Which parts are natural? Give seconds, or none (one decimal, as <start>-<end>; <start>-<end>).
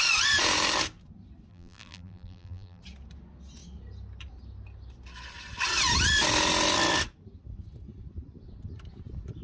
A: 0.0-1.5; 2.8-9.4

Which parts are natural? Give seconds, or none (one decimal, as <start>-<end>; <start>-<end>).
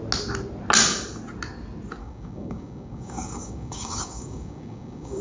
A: 0.0-2.0